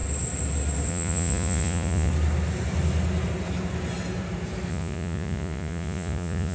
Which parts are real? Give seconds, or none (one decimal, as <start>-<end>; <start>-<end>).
0.0-0.9; 2.1-4.7